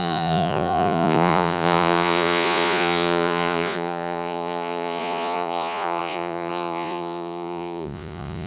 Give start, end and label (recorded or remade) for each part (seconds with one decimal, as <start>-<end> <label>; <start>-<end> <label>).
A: 0.0-8.5 remade

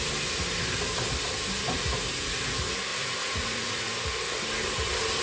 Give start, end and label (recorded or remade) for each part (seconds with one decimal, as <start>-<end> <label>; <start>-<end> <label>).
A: 0.0-2.9 recorded; 2.9-3.9 remade; 3.9-5.2 recorded

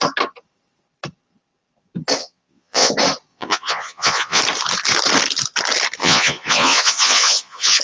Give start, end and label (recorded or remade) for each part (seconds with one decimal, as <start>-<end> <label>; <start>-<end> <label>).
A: 0.0-2.2 recorded; 2.2-2.9 remade; 2.9-3.3 recorded; 3.3-4.4 remade; 4.4-6.0 recorded; 6.0-7.8 remade

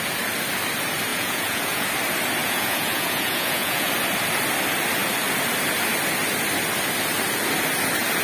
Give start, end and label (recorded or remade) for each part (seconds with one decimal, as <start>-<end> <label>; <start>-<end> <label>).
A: 0.0-1.1 recorded; 1.1-1.9 remade; 1.9-2.4 recorded; 2.4-3.9 remade; 3.9-8.2 recorded

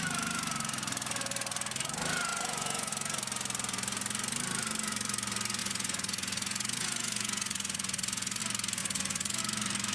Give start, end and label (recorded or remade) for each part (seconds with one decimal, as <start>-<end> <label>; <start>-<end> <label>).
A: 0.0-2.3 recorded; 2.3-2.9 remade; 2.9-5.6 recorded; 5.6-8.4 remade; 8.4-8.8 recorded; 8.8-9.4 remade; 9.4-9.9 recorded

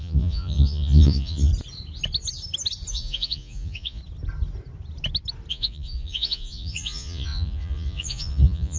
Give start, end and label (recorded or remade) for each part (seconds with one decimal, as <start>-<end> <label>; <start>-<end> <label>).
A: 0.0-1.5 remade; 1.5-2.9 recorded; 2.9-4.0 remade; 4.0-5.5 recorded; 5.5-8.8 remade

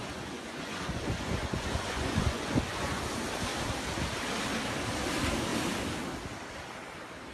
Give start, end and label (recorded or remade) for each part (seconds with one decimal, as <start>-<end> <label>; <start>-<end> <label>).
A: 0.0-3.0 remade; 3.0-7.3 recorded